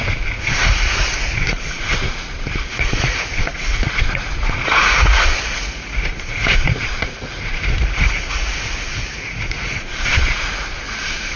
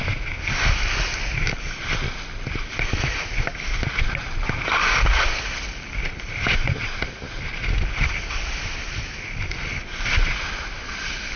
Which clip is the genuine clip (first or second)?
second